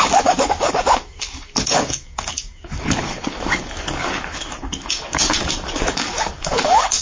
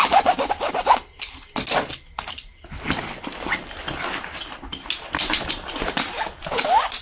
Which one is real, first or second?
second